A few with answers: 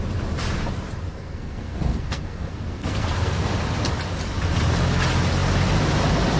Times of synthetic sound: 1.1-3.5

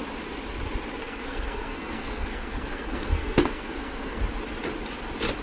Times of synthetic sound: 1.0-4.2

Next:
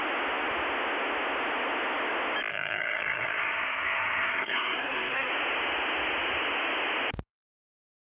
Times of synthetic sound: 2.5-5.3

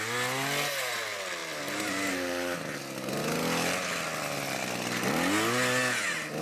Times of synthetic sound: none

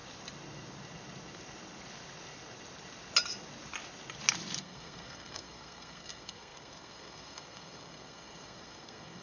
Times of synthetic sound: 4.6-9.2

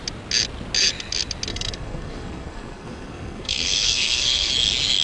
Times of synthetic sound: 1.5-4.5

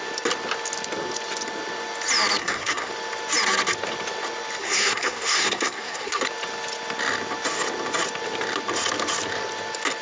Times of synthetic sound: 2.4-2.9; 4.6-6.2